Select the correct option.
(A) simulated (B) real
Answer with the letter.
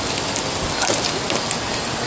B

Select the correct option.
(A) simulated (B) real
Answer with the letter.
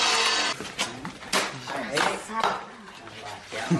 B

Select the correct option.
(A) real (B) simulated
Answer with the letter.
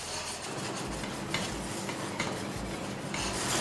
A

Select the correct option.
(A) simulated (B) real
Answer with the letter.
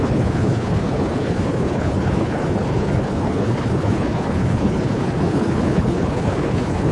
A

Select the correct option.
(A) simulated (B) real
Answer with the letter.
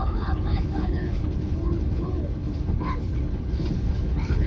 A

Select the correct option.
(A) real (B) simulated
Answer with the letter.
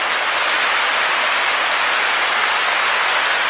A